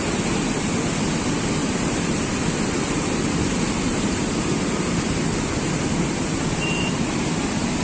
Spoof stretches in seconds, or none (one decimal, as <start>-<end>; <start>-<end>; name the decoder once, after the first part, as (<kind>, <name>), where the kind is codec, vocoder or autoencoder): 1.6-2.6 (vocoder, BigVGAN v2); 3.9-5.2